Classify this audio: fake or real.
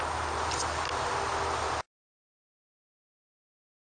real